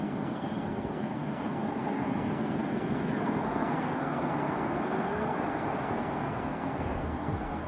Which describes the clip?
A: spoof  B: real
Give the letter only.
A